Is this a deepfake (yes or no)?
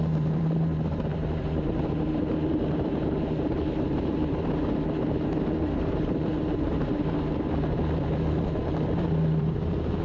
yes